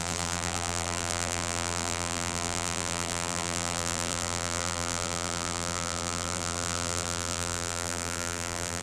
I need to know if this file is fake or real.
fake